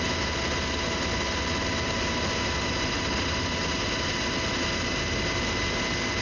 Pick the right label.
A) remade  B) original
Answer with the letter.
B